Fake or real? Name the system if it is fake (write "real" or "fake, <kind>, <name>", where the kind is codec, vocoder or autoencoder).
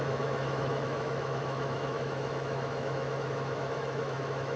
fake, autoencoder, DAC-VAE